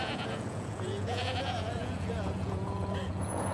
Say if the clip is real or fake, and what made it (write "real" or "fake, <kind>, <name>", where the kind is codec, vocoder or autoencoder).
fake, vocoder, Vocos